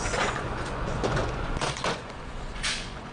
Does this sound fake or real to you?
fake